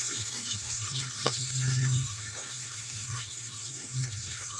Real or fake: fake